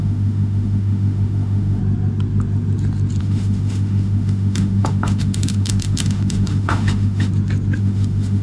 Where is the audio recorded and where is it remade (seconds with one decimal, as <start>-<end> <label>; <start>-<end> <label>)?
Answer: 0.0-1.8 remade; 1.8-3.2 recorded; 3.2-7.3 remade; 7.3-7.8 recorded; 7.8-8.4 remade